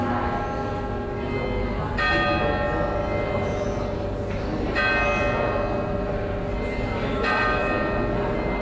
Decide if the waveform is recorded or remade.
recorded